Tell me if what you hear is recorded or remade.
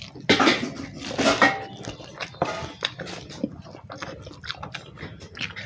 recorded